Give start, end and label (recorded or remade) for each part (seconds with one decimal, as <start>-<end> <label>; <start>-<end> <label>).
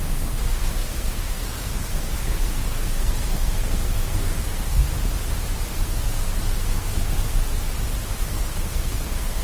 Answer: 0.0-4.8 remade; 4.8-5.7 recorded; 5.7-7.4 remade; 7.4-8.2 recorded; 8.2-9.4 remade